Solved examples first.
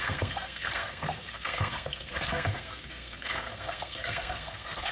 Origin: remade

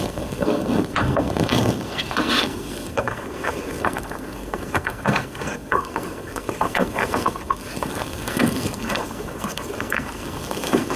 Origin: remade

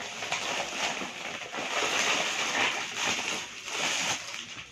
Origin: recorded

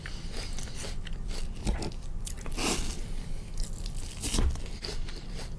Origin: recorded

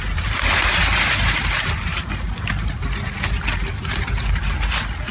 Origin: recorded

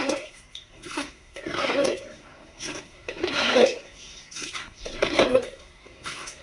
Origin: remade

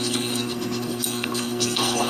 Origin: remade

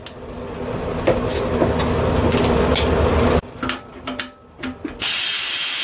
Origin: recorded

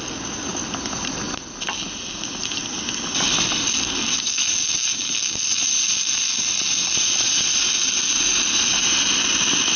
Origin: recorded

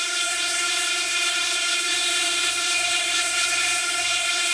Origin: remade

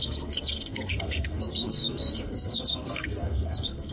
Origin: remade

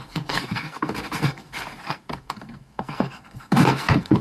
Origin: remade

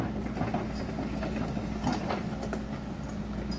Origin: recorded